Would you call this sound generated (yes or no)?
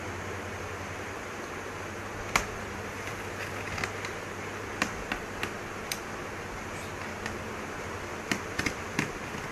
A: no